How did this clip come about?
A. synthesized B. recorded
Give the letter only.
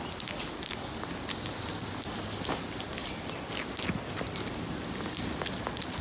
B